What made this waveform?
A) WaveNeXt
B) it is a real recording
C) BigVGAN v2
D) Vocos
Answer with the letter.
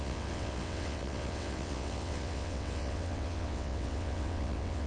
A